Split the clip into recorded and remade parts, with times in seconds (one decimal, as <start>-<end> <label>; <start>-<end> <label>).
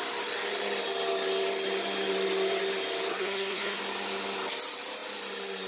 0.0-3.1 recorded; 3.1-3.8 remade; 3.8-5.7 recorded